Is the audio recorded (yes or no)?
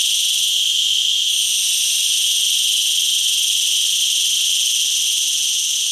yes